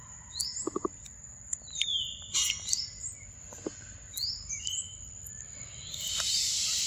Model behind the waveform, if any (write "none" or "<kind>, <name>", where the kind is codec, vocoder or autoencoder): none